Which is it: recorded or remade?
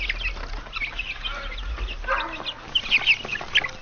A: recorded